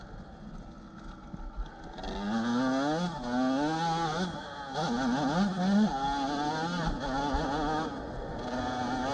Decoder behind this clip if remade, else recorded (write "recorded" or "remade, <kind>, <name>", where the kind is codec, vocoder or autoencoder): recorded